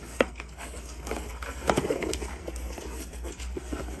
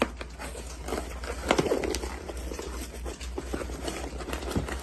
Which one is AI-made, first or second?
first